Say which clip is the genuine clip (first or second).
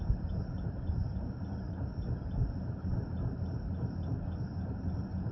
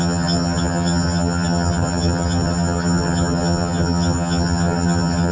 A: first